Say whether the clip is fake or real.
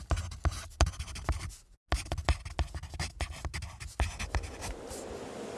real